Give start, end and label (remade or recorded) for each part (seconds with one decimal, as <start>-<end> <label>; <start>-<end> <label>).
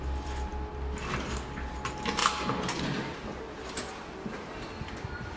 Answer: 0.0-5.4 recorded